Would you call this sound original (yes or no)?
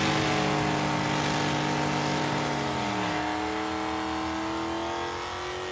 yes